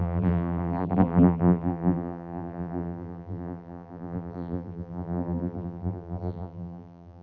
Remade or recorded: remade